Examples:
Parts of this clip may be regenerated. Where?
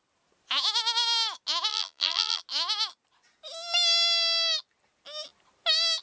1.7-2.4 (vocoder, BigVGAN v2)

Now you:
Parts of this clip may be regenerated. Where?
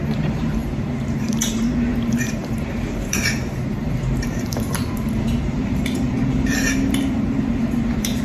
0.0-8.2 (vocoder, BigVGAN v2)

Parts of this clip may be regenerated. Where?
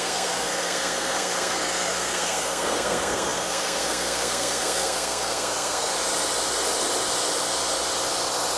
0.0-5.9 (codec, SNAC)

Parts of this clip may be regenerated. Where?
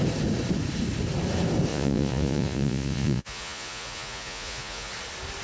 1.7-4.9 (vocoder, Vocos)